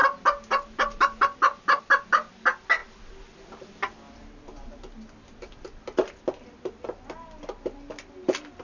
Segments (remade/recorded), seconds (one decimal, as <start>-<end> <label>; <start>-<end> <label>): 0.0-8.6 recorded

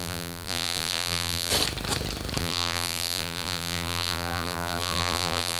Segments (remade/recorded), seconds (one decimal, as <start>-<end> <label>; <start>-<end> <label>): 0.0-1.5 remade; 1.5-2.4 recorded; 2.4-5.6 remade

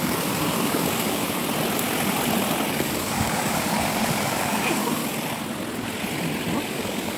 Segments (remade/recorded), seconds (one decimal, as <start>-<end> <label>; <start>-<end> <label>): 0.0-1.4 remade; 1.4-2.8 recorded; 2.8-5.0 remade; 5.0-6.7 recorded; 6.7-7.2 remade

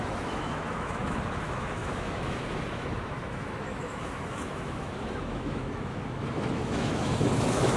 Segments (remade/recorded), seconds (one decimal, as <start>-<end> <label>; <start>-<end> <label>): 0.0-7.8 remade

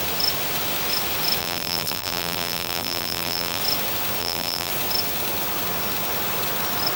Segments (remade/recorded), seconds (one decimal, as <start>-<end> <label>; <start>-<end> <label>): 0.0-1.4 recorded; 1.4-3.6 remade; 3.6-4.2 recorded; 4.2-4.7 remade; 4.7-7.0 recorded

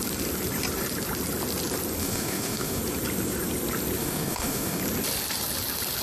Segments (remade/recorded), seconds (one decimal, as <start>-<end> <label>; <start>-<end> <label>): 0.0-2.0 recorded; 2.0-2.8 remade; 2.8-4.0 recorded; 4.0-4.8 remade; 4.8-6.0 recorded